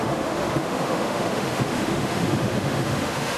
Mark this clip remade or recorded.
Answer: remade